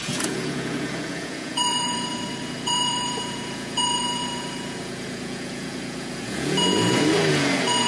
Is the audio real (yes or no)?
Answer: no